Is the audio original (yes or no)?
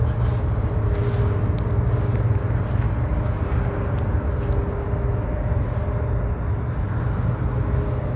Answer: yes